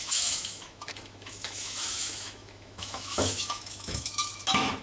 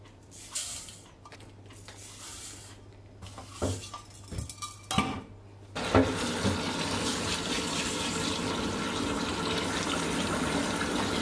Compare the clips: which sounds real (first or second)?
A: second